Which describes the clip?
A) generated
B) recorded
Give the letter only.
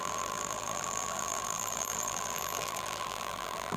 A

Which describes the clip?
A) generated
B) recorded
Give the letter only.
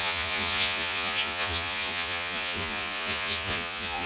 A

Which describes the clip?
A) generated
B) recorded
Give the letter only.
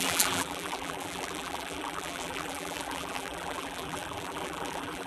A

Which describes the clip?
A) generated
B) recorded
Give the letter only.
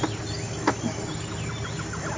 B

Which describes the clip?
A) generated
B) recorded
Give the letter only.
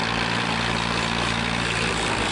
B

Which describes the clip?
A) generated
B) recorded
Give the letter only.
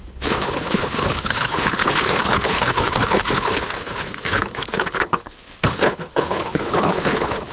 A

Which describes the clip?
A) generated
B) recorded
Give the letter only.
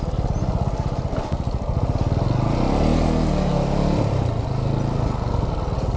B